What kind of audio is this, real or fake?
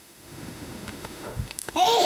fake